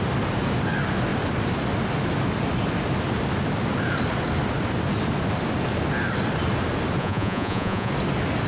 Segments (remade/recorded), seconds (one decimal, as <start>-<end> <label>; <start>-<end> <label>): 0.0-7.0 recorded; 7.0-7.9 remade; 7.9-8.5 recorded